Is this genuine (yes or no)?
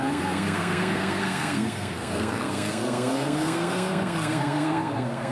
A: no